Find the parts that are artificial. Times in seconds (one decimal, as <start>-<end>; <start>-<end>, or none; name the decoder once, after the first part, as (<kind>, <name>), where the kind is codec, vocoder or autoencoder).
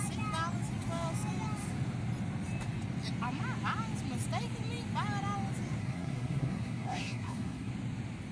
5.8-7.7 (codec, SNAC)